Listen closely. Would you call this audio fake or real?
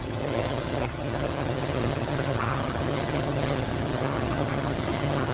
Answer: fake